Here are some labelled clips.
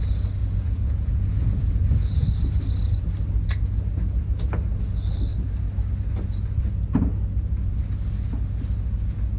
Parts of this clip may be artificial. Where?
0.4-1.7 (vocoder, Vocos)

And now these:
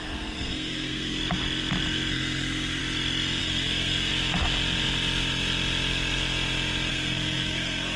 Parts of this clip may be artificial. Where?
0.0-1.2 (codec, SNAC); 2.1-2.8; 3.4-4.1; 6.9-8.0

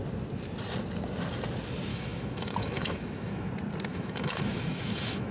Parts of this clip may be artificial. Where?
1.9-3.5 (autoencoder, DAC-VAE); 3.9-5.3

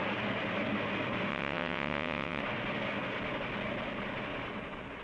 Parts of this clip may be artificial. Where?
1.3-2.4 (vocoder, WaveNeXt)

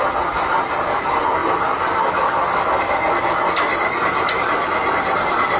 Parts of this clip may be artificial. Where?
none

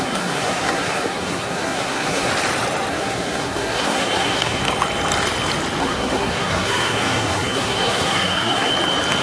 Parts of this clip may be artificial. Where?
0.0-2.3 (codec, SNAC); 2.9-4.6; 5.8-8.7

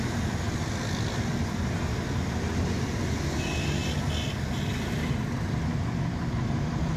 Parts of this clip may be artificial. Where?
none